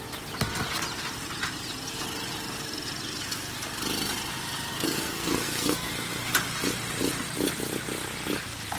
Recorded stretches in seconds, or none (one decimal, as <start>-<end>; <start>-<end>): 0.0-4.7; 5.9-8.8